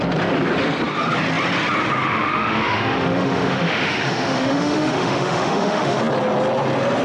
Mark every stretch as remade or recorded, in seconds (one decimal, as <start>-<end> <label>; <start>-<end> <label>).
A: 0.0-1.8 recorded; 1.8-6.0 remade; 6.0-7.0 recorded